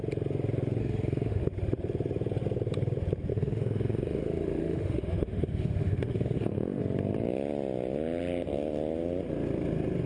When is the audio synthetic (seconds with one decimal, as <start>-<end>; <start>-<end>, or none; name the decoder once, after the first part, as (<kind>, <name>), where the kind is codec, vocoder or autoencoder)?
0.8-1.4 (autoencoder, DAC-VAE); 3.3-6.8